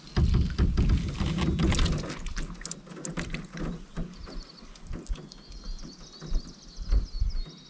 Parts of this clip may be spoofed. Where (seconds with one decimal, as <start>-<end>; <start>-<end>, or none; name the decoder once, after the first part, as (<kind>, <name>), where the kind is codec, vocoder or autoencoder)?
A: none